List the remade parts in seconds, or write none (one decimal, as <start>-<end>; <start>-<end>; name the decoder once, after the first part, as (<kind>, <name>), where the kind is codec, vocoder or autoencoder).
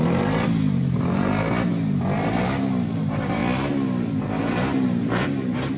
0.0-3.4 (vocoder, BigVGAN v2); 4.1-5.8